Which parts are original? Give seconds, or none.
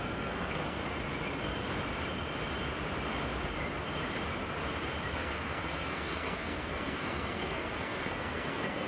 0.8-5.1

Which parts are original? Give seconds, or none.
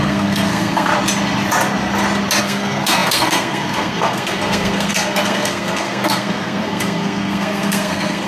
0.9-2.4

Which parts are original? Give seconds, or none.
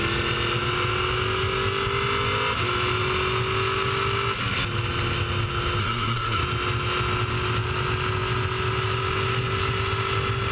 0.0-5.8; 6.4-10.5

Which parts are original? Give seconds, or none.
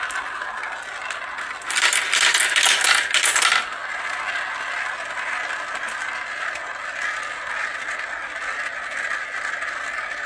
0.0-10.3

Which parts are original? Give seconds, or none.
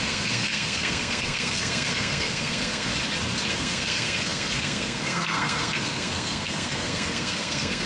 2.9-3.5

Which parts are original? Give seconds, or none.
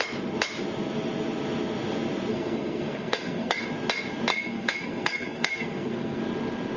0.0-2.3; 3.6-4.3; 6.2-6.8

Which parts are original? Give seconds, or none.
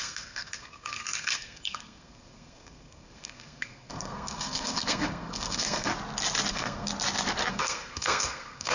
5.9-6.5; 6.9-7.5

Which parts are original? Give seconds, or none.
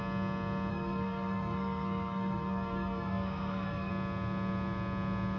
0.0-0.7; 3.9-5.4